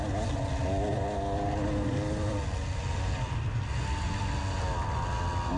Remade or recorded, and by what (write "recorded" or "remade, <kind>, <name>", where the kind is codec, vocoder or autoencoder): recorded